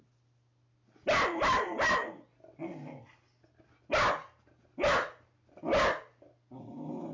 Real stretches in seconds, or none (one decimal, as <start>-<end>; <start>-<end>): 0.0-7.1